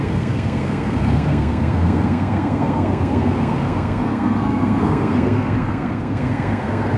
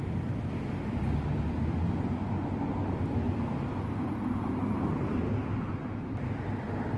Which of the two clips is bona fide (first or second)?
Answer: second